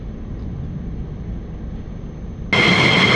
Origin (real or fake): real